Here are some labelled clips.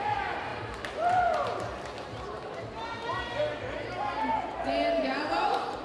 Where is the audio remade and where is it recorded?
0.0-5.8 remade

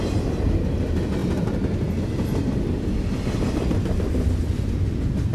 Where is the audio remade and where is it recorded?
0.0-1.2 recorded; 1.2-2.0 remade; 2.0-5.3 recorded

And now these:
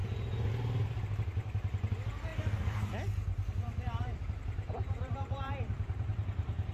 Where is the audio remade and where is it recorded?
0.0-2.3 recorded; 2.3-2.9 remade; 2.9-3.3 recorded; 3.3-6.7 remade

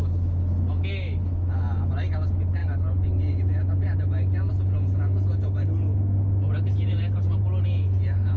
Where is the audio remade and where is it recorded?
0.0-8.4 recorded

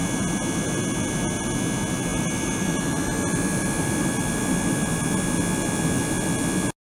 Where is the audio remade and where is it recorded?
0.0-2.1 recorded; 2.1-5.1 remade; 5.1-6.8 recorded